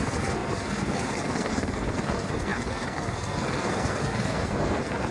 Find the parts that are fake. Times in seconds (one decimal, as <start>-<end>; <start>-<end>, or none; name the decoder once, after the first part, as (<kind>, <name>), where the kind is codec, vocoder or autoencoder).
0.0-5.1 (codec, SNAC)